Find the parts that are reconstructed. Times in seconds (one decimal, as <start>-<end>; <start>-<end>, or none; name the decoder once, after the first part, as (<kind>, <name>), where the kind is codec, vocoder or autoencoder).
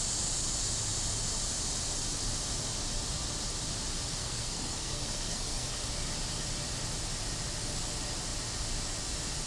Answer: 4.2-5.7 (codec, SNAC)